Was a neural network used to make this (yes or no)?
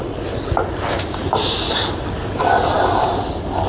no